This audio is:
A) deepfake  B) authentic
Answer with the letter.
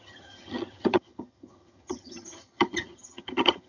A